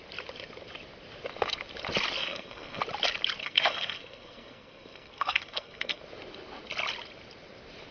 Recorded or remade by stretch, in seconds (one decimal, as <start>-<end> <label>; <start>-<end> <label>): 0.0-2.2 recorded; 2.2-2.8 remade; 2.8-3.4 recorded; 3.4-6.0 remade; 6.0-7.9 recorded